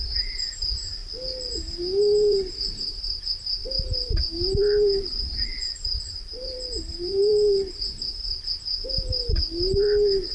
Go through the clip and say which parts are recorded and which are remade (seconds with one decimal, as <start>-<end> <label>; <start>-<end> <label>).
0.0-1.0 remade; 1.0-1.5 recorded; 1.5-10.3 remade